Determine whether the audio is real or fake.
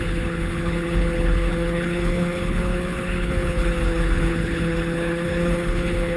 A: fake